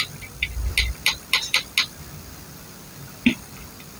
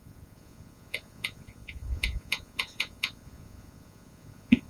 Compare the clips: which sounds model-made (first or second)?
second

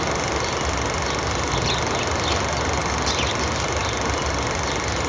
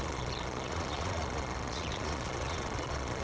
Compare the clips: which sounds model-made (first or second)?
second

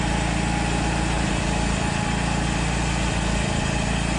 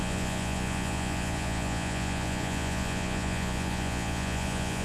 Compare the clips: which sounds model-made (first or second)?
second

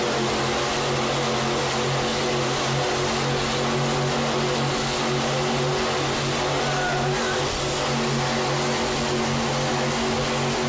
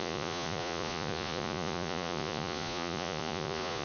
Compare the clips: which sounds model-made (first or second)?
second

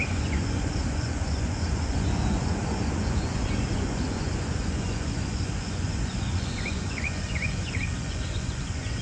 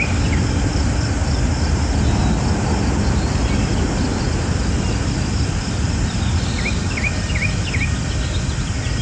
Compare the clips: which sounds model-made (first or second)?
first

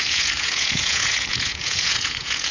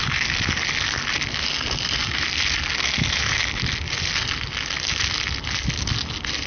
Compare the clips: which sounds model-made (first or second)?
first